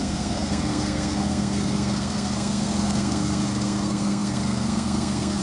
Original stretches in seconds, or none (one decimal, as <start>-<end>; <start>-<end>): none